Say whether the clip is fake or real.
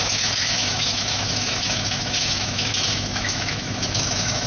fake